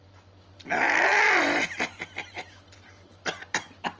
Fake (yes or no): no